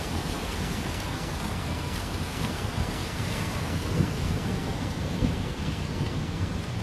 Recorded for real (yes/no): no